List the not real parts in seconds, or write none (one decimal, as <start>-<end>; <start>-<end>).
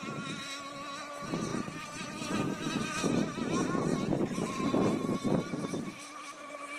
3.9-6.8